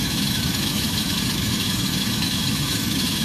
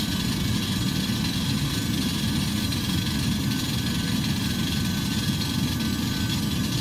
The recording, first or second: second